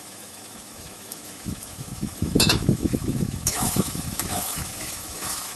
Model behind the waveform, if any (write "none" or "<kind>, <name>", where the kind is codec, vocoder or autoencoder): autoencoder, DAC-VAE